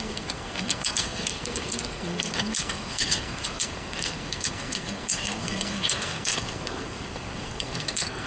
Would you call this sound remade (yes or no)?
yes